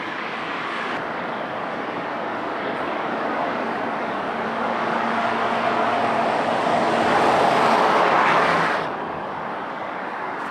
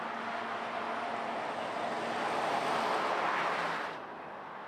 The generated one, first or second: first